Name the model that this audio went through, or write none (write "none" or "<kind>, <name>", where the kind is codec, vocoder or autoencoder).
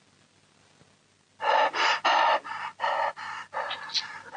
none